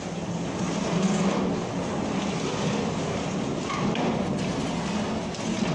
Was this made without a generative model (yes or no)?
yes